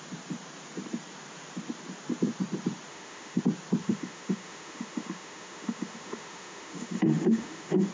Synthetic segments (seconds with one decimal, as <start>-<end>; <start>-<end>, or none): 2.9-3.4; 3.8-7.9